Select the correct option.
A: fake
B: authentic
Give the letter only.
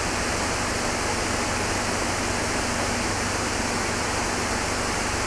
B